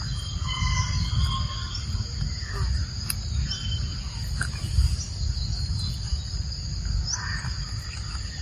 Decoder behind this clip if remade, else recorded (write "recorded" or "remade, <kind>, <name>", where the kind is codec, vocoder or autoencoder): recorded